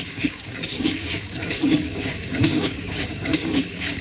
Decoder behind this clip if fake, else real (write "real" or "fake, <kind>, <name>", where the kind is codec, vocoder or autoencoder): fake, codec, DAC